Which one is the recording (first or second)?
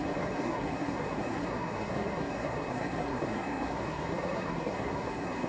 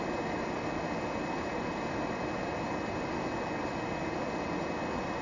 second